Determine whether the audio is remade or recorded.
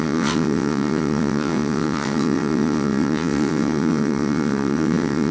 remade